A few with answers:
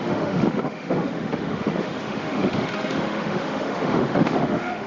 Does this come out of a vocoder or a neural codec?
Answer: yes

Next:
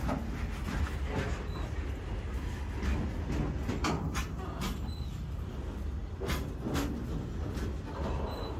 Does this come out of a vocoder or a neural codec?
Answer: no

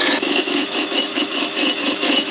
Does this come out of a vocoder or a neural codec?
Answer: yes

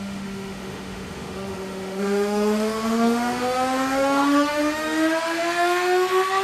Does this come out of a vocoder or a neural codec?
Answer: yes